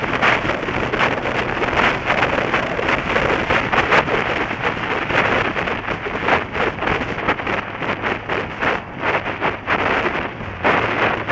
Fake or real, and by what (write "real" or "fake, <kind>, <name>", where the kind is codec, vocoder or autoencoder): real